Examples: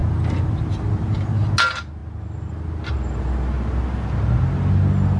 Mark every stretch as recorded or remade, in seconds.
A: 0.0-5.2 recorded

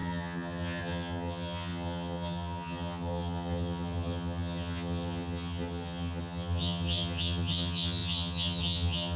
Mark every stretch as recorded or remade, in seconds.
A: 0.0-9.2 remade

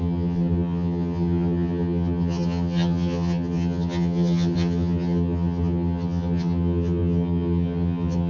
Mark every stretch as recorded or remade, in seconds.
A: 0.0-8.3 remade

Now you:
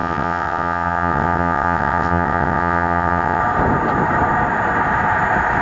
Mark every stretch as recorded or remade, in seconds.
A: 0.0-3.4 remade; 3.4-5.6 recorded

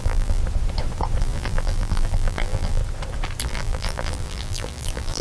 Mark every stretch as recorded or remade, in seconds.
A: 0.0-0.4 remade; 0.4-1.2 recorded; 1.2-2.8 remade; 2.8-3.4 recorded; 3.4-5.2 remade

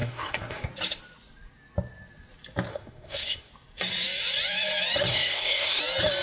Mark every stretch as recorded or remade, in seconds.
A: 0.0-0.7 remade; 0.7-2.7 recorded; 2.7-3.5 remade; 3.5-5.1 recorded; 5.1-5.8 remade; 5.8-6.2 recorded

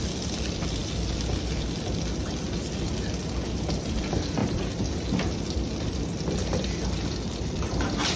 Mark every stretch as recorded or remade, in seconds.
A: 0.0-8.2 recorded